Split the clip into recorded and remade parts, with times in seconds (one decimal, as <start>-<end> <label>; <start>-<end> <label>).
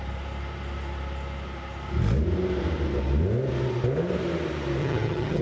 0.0-4.8 recorded; 4.8-5.4 remade